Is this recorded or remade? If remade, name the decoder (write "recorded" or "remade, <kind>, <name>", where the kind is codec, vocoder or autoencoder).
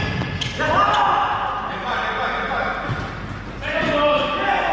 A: recorded